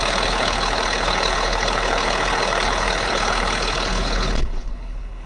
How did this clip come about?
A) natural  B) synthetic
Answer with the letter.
B